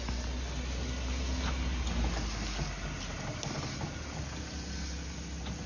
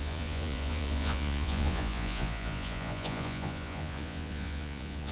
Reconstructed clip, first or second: second